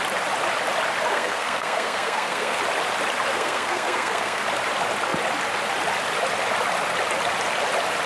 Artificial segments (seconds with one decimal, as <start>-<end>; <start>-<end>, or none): 1.1-2.6; 3.3-4.4